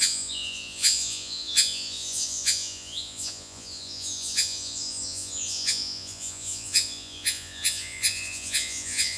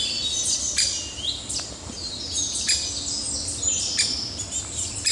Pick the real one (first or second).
second